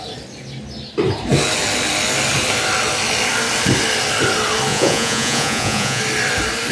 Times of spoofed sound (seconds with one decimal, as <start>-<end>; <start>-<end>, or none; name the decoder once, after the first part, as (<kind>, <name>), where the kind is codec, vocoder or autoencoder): 4.7-6.0 (vocoder, Vocos)